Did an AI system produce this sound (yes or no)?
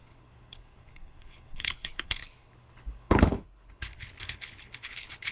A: yes